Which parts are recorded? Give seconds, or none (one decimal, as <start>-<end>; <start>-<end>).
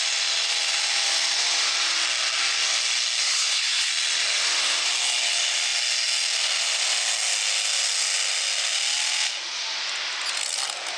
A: 0.0-3.2; 3.9-11.0